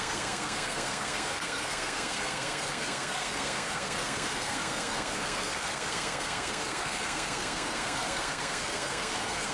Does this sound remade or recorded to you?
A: remade